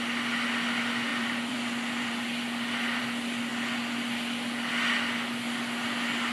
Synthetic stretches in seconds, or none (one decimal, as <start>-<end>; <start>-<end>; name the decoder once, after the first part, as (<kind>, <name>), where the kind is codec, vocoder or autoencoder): 1.1-3.0 (vocoder, BigVGAN v2)